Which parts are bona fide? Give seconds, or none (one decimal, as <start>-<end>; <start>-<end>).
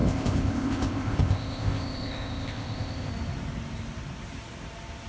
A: 3.1-5.1